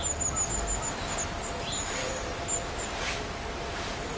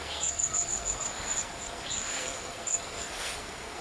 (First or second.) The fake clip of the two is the second